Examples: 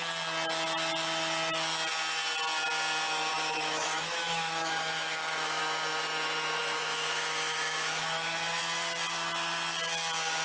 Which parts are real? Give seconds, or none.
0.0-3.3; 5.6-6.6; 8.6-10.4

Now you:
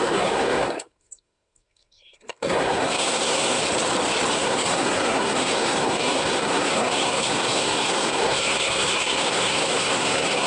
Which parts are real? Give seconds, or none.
3.6-4.3

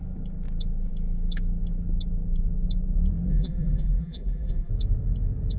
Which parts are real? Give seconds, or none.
0.0-3.3; 4.7-5.6

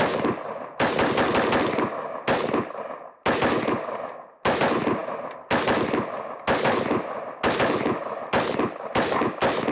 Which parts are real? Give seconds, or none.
0.0-9.7

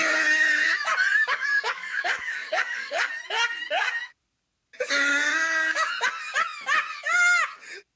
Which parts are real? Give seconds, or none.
0.0-1.2; 3.1-5.1; 5.9-8.0

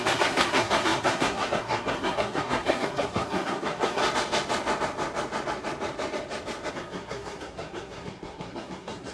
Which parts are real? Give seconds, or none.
4.0-6.7

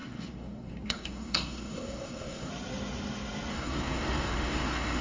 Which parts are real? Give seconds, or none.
2.5-3.5

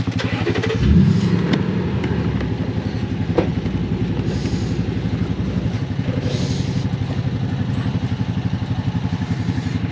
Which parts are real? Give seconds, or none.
0.0-9.9